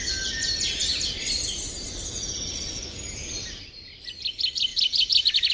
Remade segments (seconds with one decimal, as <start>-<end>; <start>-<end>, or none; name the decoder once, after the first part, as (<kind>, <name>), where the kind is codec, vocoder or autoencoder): none